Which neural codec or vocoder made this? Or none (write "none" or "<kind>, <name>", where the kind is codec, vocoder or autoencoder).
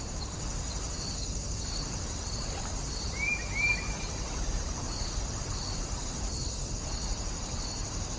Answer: vocoder, BigVGAN v2